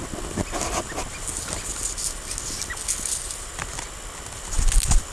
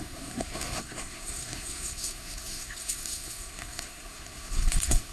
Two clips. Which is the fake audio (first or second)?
second